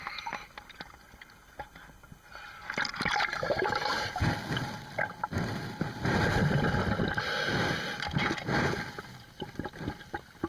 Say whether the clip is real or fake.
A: real